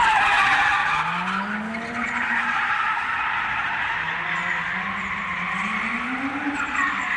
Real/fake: real